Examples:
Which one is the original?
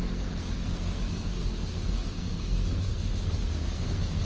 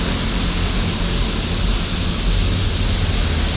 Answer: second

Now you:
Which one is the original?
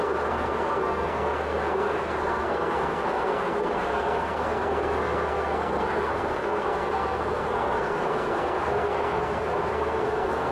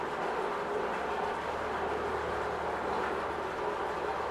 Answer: second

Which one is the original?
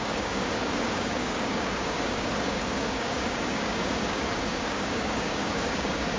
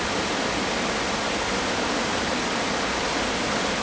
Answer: second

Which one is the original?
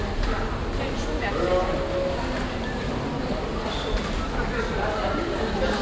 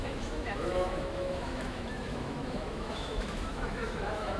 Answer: first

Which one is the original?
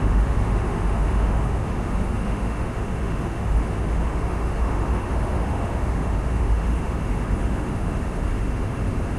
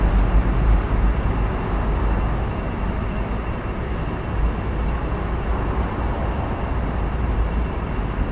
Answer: second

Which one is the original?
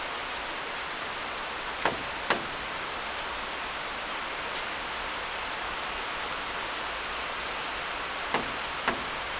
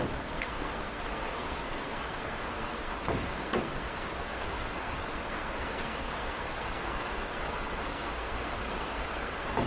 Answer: first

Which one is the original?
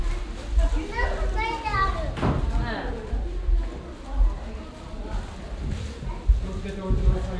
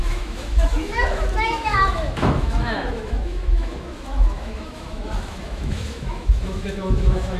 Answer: first